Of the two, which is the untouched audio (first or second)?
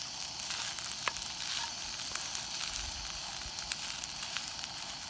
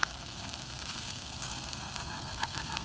first